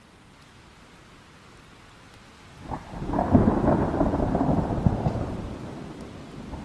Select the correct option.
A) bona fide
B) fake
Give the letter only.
A